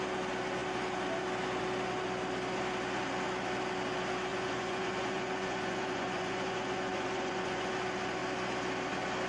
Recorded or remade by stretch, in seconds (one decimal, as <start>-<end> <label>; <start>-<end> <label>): 0.0-4.3 recorded; 4.3-7.7 remade; 7.7-9.3 recorded